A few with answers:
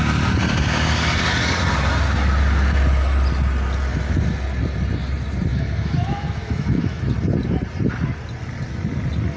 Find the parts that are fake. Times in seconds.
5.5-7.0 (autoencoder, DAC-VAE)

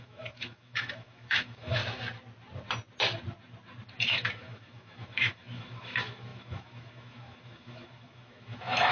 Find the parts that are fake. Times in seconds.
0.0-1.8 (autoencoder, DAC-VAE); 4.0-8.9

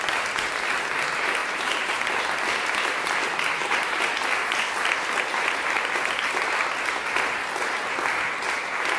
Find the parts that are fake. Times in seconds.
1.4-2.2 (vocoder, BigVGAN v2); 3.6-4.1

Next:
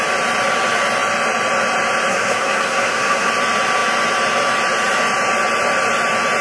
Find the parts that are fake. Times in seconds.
2.1-3.3 (codec, SNAC)

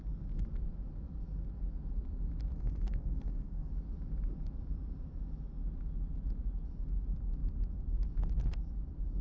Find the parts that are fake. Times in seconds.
2.5-3.7 (codec, SNAC)